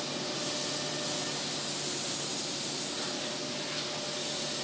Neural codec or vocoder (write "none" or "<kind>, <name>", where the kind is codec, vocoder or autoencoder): none